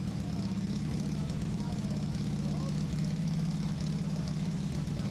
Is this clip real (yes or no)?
no